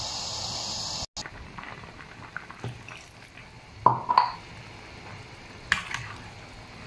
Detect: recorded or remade recorded